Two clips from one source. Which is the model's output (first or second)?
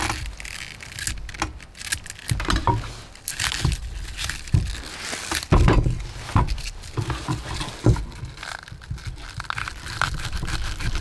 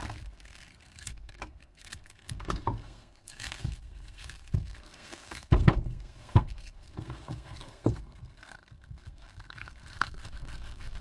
second